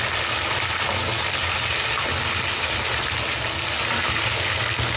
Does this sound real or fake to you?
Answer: real